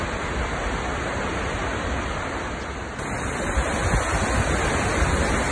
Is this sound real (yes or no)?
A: yes